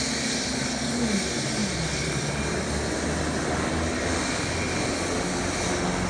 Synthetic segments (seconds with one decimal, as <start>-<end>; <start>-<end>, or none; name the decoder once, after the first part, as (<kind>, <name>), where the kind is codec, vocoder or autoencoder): none